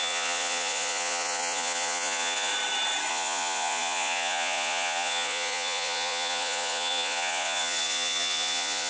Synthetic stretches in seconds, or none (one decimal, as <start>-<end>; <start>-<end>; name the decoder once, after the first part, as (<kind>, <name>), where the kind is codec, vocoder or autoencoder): 0.0-2.5 (vocoder, Vocos); 3.1-8.9